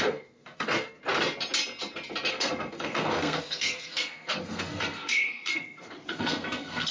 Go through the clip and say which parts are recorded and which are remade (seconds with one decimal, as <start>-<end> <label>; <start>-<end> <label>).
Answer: 0.0-1.0 remade; 1.0-2.3 recorded; 2.3-6.9 remade